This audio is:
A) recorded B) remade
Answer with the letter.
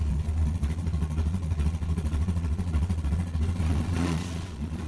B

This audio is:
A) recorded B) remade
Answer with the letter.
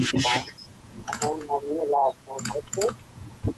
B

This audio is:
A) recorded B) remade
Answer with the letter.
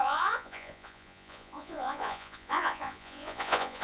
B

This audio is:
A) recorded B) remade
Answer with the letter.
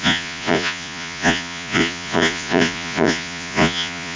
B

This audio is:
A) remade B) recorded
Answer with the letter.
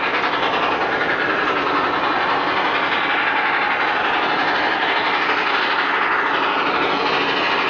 B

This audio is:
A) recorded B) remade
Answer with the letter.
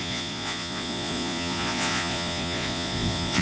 B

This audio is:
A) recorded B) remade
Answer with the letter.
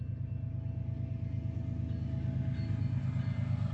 A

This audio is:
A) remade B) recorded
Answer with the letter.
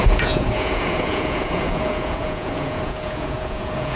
A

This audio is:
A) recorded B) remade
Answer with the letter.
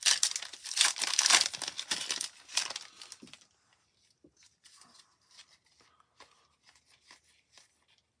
A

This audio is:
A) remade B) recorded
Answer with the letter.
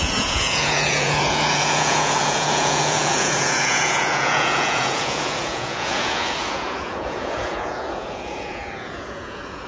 A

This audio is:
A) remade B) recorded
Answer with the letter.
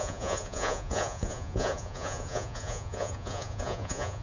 A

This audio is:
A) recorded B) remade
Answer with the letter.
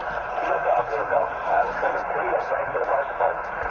B